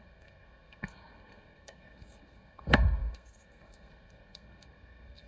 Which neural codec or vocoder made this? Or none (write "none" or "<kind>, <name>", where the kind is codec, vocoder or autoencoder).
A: codec, SNAC